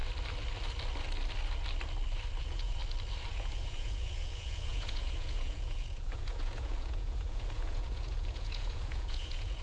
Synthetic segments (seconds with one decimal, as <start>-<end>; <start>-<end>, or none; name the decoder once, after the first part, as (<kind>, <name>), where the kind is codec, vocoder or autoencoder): 2.4-2.8 (vocoder, Vocos); 3.3-9.6